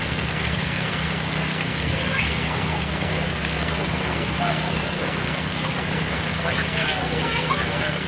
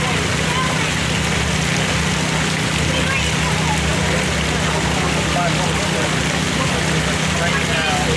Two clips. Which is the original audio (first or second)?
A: second